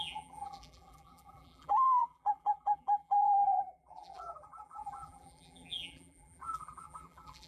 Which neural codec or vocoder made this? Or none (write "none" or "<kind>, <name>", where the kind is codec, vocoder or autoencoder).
vocoder, BigVGAN v2